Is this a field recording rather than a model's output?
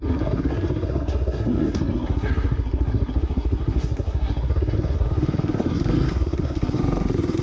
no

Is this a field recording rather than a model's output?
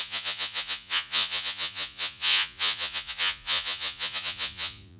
no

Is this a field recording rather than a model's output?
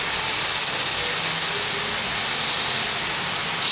yes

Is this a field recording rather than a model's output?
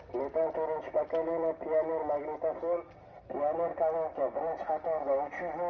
yes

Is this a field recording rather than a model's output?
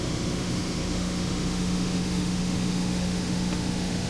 no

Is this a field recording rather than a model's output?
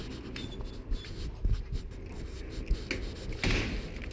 yes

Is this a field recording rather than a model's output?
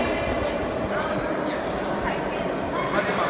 yes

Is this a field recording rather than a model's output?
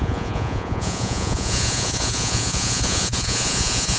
no